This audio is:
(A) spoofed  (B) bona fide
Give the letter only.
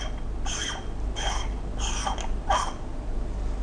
B